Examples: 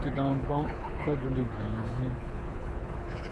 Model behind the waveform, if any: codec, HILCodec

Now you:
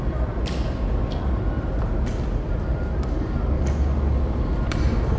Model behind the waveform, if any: none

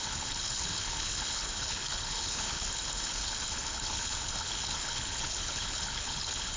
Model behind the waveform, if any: codec, HILCodec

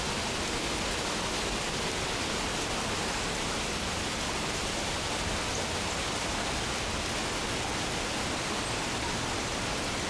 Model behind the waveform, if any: none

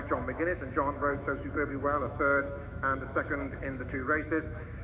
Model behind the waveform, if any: autoencoder, DAC-VAE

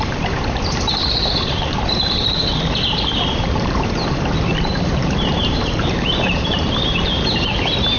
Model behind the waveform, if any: vocoder, BigVGAN v2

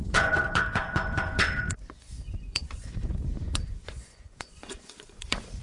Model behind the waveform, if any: vocoder, Vocos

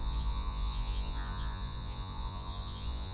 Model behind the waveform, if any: vocoder, Vocos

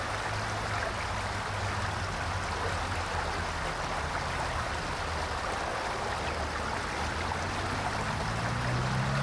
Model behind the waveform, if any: none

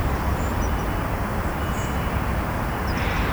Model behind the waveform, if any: vocoder, BigVGAN v2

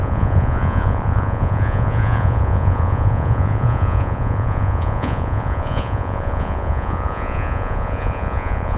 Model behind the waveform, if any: vocoder, Vocos